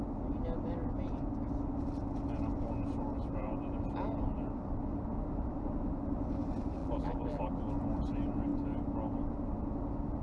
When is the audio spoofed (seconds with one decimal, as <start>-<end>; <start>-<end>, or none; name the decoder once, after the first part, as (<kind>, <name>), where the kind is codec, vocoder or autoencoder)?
6.8-7.6 (vocoder, BigVGAN v2)